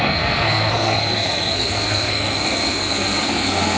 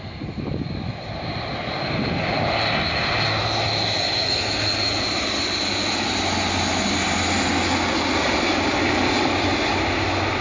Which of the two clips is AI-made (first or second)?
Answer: first